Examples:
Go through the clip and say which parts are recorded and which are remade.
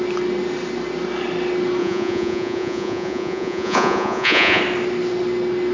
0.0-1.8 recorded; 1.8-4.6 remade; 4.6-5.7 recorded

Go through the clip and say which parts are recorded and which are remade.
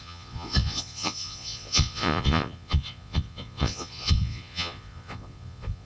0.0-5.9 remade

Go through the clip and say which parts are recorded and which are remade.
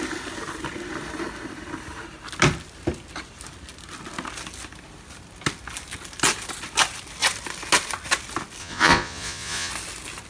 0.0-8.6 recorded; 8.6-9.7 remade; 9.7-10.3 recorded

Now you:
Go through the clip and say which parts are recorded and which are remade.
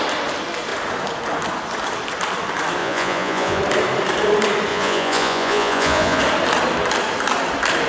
0.0-2.8 recorded; 2.8-3.6 remade; 3.6-4.7 recorded; 4.7-6.2 remade; 6.2-7.9 recorded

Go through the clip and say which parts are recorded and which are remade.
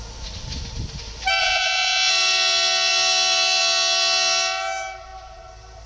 0.0-1.4 recorded; 1.4-2.1 remade; 2.1-5.9 recorded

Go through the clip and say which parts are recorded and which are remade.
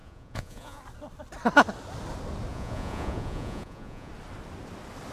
0.0-0.8 remade; 0.8-2.5 recorded; 2.5-4.1 remade; 4.1-5.1 recorded